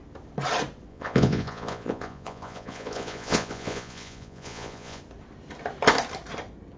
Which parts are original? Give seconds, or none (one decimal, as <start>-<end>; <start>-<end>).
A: 0.0-0.9; 5.0-6.8